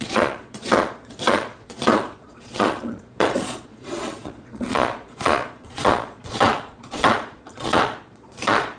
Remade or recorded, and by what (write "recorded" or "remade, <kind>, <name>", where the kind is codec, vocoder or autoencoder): remade, vocoder, Vocos